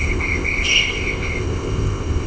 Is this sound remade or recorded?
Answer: remade